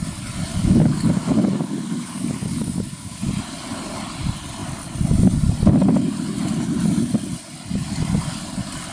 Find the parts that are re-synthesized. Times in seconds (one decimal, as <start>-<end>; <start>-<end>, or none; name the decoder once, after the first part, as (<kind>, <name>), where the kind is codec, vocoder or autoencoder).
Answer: 0.5-3.3 (codec, DAC)